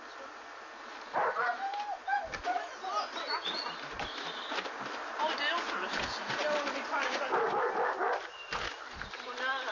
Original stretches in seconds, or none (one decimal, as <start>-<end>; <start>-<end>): 0.0-9.7